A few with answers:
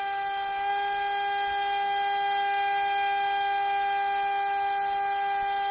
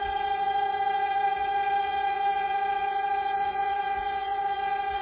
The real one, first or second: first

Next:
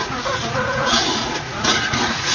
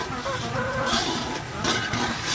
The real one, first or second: second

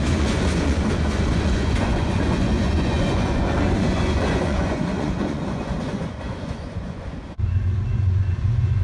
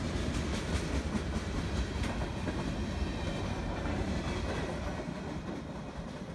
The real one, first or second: second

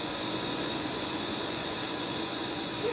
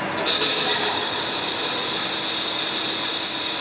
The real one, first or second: second